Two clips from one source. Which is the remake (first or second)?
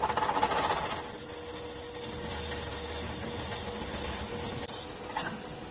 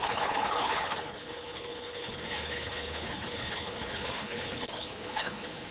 second